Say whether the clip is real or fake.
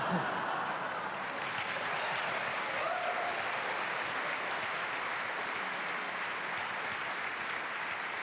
real